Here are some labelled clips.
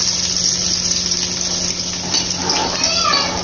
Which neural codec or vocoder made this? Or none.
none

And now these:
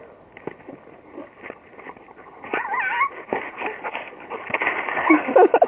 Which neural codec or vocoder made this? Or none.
none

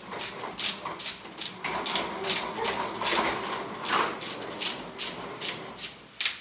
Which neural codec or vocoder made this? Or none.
none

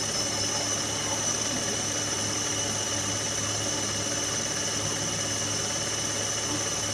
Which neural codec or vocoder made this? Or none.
none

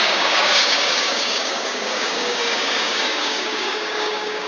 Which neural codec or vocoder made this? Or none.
codec, DAC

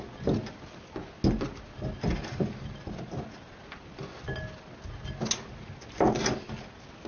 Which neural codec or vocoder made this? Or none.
none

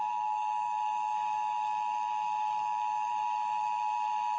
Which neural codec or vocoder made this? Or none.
codec, DAC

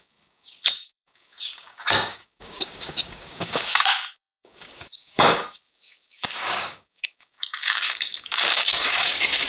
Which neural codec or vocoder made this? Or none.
codec, DAC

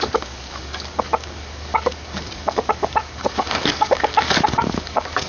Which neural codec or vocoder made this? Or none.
codec, DAC